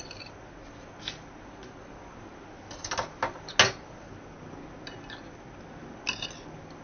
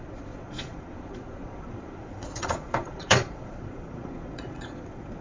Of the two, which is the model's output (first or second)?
second